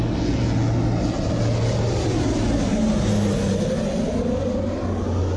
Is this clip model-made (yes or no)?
no